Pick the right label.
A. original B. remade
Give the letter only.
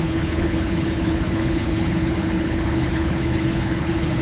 B